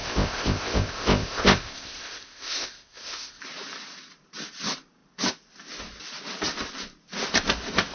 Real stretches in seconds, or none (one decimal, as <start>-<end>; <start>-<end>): 3.4-7.9